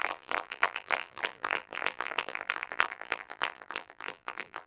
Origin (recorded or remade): remade